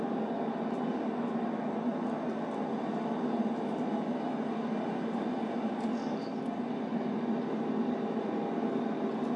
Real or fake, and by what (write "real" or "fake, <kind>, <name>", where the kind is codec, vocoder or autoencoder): real